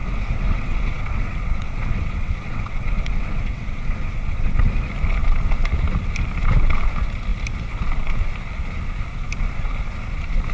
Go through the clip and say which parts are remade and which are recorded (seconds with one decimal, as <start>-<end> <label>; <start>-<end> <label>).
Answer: 0.0-4.7 remade; 4.7-10.5 recorded